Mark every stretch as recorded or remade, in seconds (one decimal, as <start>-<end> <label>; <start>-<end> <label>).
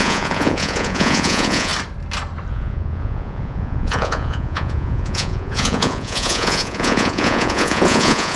0.0-1.7 remade; 1.7-2.5 recorded; 2.5-8.4 remade